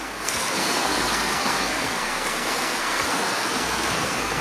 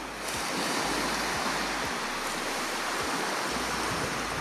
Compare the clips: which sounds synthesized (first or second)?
first